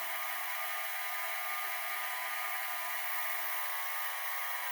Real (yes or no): yes